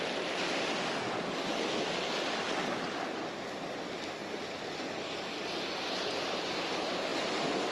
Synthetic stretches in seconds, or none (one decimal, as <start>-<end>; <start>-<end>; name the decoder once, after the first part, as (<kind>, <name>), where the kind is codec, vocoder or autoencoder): none